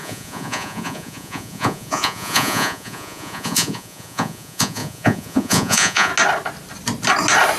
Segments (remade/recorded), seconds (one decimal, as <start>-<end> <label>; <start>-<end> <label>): 0.0-6.1 remade; 6.1-7.6 recorded